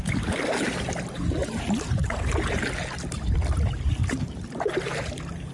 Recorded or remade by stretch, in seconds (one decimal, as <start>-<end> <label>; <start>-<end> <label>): 0.0-1.4 recorded; 1.4-2.3 remade; 2.3-4.0 recorded; 4.0-5.0 remade; 5.0-5.5 recorded